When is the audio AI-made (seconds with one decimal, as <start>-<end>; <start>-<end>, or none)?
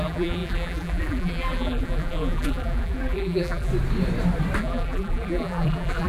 0.0-3.7; 4.6-6.1